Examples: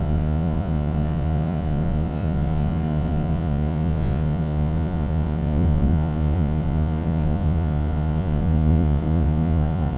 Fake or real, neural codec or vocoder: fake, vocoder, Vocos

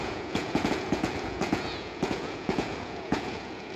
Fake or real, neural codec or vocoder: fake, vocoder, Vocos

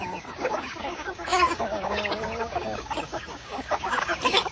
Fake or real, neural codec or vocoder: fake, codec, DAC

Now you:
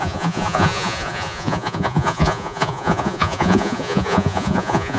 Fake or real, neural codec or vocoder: fake, vocoder, Vocos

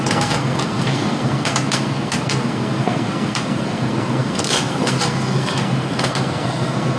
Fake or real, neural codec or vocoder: fake, codec, SNAC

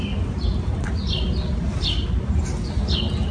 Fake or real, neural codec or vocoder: real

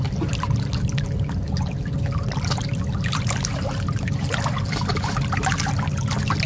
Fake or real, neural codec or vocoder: real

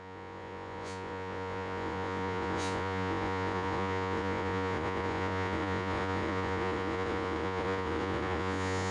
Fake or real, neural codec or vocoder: fake, vocoder, Vocos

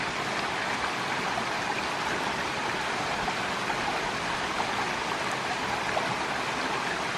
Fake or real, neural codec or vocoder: real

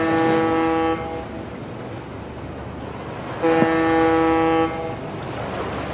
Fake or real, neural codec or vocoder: real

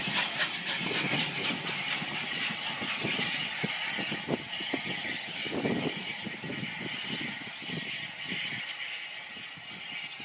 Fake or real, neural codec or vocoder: real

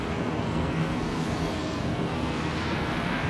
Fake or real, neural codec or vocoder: fake, codec, SNAC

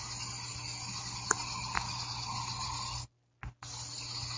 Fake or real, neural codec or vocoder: real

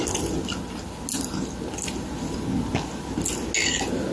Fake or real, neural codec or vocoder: real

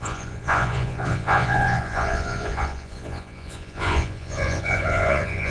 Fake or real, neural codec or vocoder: fake, vocoder, Vocos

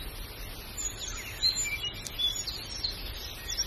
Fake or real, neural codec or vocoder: real